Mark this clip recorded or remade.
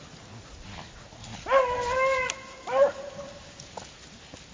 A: recorded